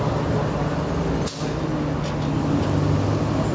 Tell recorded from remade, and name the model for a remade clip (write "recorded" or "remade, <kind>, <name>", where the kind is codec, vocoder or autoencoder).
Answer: recorded